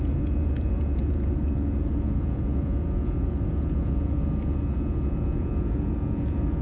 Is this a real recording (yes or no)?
no